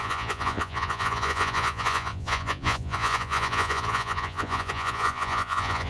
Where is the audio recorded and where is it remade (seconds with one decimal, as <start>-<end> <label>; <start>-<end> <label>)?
0.0-5.9 remade